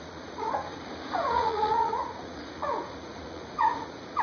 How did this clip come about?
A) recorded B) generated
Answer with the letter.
B